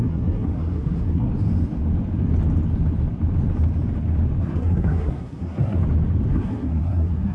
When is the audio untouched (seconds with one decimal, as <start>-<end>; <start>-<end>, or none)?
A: 1.3-4.4; 5.8-6.3